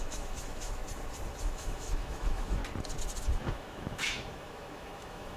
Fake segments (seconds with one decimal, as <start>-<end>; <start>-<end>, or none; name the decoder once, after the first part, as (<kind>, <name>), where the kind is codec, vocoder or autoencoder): 0.0-0.8 (autoencoder, DAC-VAE); 1.4-2.6; 3.2-5.4